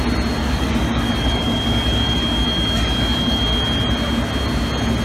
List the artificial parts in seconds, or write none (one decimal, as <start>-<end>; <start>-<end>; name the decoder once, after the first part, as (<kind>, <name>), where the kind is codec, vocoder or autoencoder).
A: 0.4-3.4 (codec, DAC)